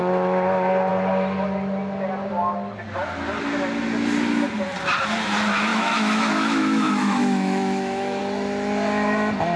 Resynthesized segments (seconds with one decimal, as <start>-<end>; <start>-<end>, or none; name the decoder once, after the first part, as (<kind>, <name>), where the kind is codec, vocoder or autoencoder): 5.7-8.2 (autoencoder, DAC-VAE)